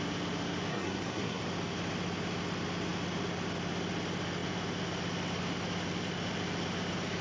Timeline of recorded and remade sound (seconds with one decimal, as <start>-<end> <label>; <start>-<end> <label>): 0.0-0.7 recorded; 0.7-1.4 remade; 1.4-7.2 recorded